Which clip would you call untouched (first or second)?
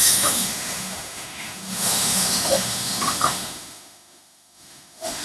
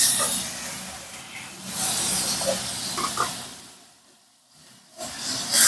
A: second